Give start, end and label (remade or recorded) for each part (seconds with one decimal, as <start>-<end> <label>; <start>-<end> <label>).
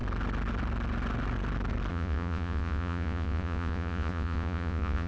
0.0-1.9 recorded; 1.9-5.1 remade